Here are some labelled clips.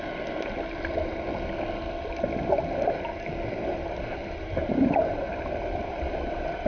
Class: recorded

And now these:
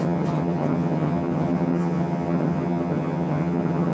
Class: remade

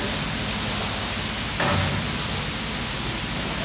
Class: recorded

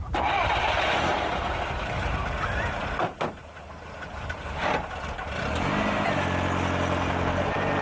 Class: recorded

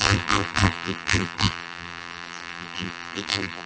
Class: remade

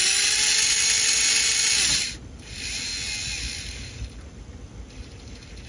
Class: recorded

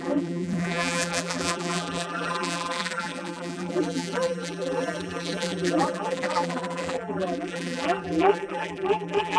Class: remade